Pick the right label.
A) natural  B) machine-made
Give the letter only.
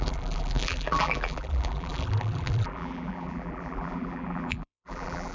B